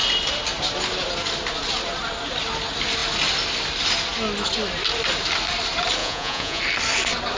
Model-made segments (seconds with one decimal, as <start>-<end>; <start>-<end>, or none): 6.0-6.6